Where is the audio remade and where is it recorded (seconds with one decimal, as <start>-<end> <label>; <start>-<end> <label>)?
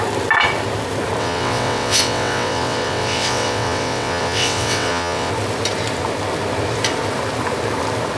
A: 0.0-1.2 recorded; 1.2-5.3 remade; 5.3-8.2 recorded